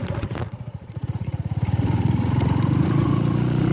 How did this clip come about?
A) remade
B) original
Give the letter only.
A